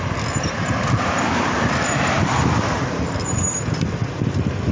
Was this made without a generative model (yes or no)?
yes